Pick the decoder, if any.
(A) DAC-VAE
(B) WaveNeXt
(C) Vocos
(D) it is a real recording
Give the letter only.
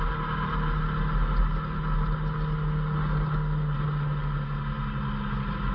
D